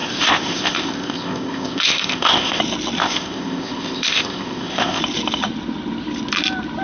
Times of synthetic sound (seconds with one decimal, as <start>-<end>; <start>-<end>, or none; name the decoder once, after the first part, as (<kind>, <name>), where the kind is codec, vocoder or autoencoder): 0.0-2.6 (codec, ZipCodec); 3.0-5.0